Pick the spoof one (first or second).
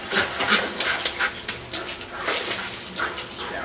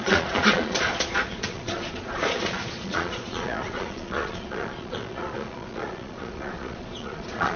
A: second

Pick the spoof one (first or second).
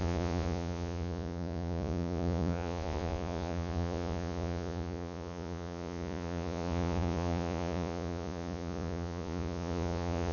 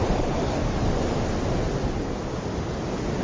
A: first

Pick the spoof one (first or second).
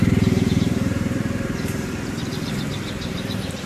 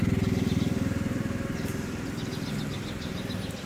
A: first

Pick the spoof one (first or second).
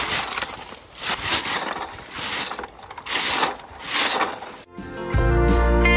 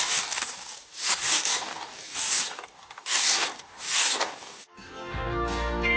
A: second